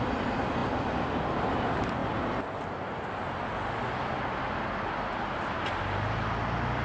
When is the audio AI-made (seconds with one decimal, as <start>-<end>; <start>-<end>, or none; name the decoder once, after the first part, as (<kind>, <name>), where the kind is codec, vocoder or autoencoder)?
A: none